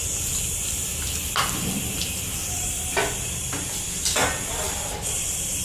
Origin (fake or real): fake